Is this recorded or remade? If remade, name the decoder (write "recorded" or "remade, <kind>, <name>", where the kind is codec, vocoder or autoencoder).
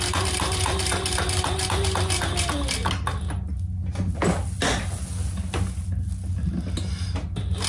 recorded